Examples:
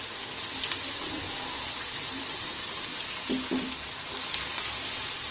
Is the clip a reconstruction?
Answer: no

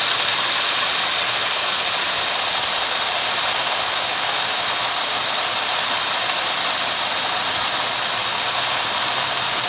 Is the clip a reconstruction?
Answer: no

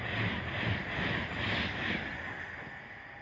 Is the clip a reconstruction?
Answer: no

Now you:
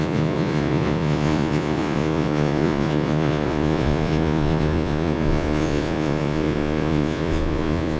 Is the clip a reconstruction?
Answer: yes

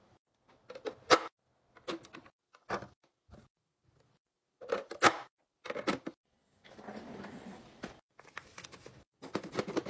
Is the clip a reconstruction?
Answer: no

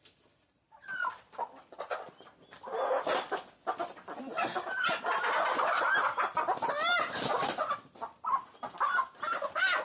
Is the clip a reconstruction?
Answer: no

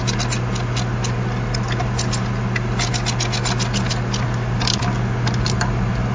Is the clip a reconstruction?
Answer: no